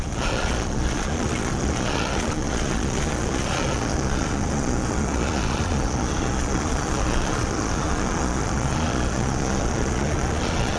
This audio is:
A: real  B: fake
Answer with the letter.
B